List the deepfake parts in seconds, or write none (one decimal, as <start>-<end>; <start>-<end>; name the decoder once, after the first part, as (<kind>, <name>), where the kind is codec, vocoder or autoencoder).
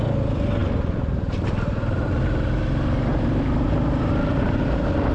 0.6-2.2 (vocoder, BigVGAN v2); 3.1-3.7; 4.3-5.1